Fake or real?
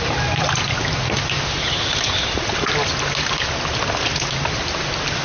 real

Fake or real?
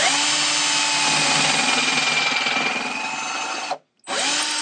real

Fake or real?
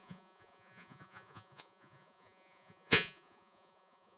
fake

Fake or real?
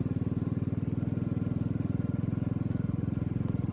real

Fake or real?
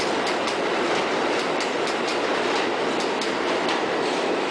fake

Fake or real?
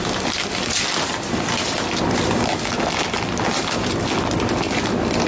real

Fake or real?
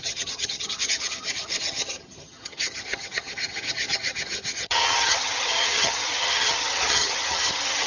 fake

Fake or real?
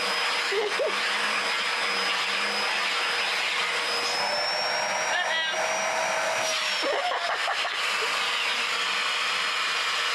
real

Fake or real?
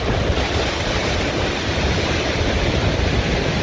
fake